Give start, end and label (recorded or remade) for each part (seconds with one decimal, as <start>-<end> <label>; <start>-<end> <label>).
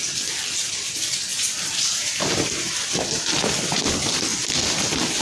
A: 0.0-1.3 recorded; 1.3-2.7 remade; 2.7-5.2 recorded